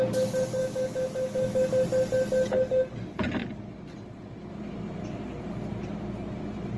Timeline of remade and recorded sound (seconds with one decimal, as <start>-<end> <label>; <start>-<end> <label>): 0.0-0.6 recorded; 0.6-1.7 remade; 1.7-6.8 recorded